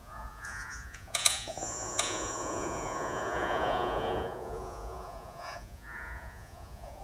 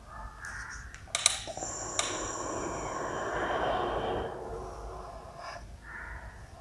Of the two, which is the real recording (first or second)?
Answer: second